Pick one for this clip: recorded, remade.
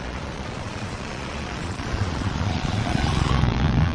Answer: remade